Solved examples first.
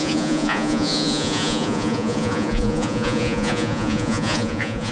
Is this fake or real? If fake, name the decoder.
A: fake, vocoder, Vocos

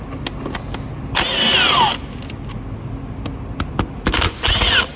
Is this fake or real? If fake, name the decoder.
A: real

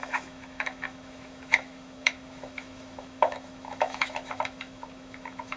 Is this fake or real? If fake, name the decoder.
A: fake, autoencoder, DAC-VAE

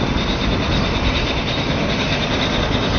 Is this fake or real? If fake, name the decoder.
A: real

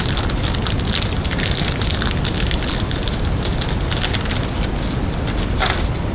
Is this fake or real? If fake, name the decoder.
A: real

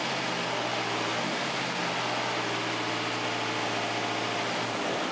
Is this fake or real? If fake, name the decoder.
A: real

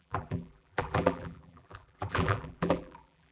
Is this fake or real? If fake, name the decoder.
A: fake, vocoder, BigVGAN v2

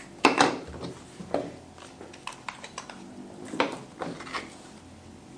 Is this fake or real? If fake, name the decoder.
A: real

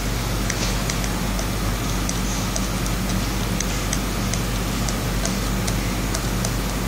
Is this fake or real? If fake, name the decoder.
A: real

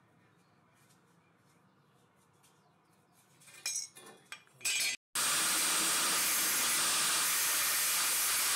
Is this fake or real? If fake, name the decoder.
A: real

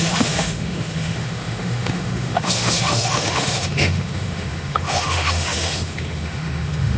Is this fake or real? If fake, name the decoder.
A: fake, autoencoder, DAC-VAE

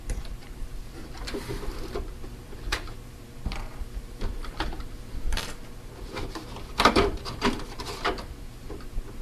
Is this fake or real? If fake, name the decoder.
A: fake, vocoder, BigVGAN v2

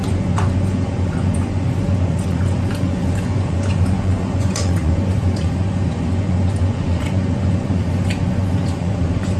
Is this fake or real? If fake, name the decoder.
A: fake, vocoder, Vocos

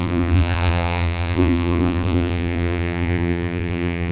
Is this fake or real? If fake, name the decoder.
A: fake, vocoder, BigVGAN v2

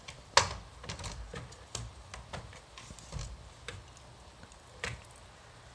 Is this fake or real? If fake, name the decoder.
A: real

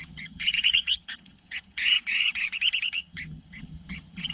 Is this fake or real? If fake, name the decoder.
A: fake, vocoder, HiFi-GAN